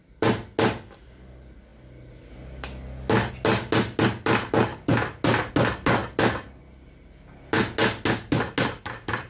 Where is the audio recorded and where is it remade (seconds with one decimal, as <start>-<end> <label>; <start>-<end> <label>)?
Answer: 0.0-9.3 recorded